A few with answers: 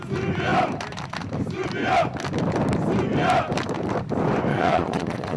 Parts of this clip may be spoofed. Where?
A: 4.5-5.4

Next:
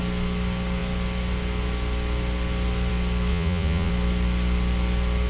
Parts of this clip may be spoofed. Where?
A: 3.3-3.9